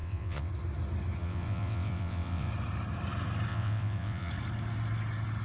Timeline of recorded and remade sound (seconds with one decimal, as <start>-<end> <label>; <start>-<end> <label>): 0.0-0.5 remade; 0.5-1.2 recorded; 1.2-2.5 remade; 2.5-3.5 recorded; 3.5-4.3 remade; 4.3-5.4 recorded

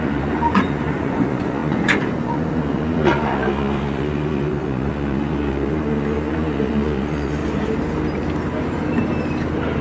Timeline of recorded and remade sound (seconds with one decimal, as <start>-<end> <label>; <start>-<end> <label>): 0.0-7.4 remade; 7.4-9.8 recorded

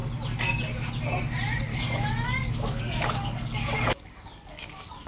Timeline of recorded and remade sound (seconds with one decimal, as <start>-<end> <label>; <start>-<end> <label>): 0.0-1.7 recorded; 1.7-5.1 remade

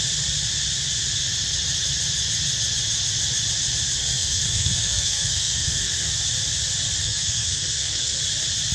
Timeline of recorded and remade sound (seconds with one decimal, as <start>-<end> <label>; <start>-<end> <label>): 0.0-4.0 recorded; 4.0-6.1 remade; 6.1-7.0 recorded; 7.0-8.2 remade; 8.2-8.7 recorded

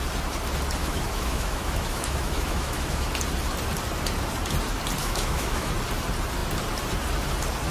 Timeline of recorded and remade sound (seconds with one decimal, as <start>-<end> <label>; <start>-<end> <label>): 0.0-0.8 recorded; 0.8-3.1 remade; 3.1-5.0 recorded; 5.0-5.7 remade; 5.7-7.7 recorded